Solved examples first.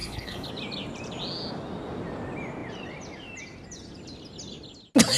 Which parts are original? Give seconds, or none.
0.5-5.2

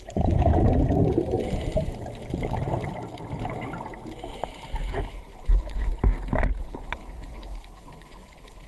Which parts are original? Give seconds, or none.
0.5-4.9; 5.9-6.6

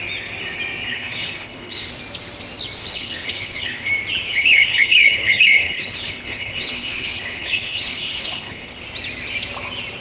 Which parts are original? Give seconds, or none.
0.0-0.9; 1.9-2.8; 3.9-4.3; 8.8-10.0

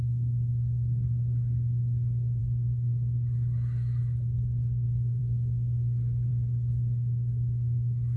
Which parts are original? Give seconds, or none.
0.0-2.4; 5.2-6.3

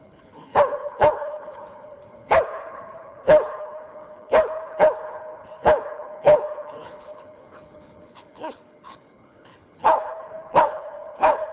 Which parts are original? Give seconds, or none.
none